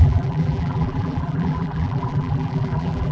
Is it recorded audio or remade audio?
remade